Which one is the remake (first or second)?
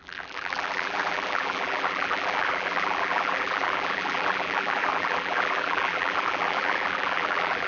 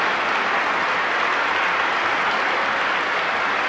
first